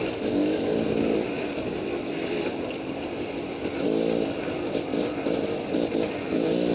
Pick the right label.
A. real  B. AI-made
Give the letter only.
A